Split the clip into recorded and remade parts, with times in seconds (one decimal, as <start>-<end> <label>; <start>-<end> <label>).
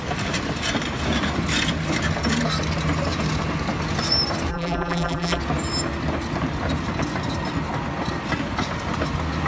0.0-4.5 recorded; 4.5-5.4 remade; 5.4-9.5 recorded